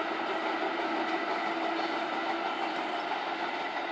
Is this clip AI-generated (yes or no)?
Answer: no